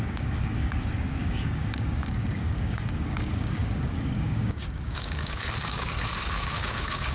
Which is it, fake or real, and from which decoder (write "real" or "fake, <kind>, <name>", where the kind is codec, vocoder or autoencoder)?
fake, codec, DAC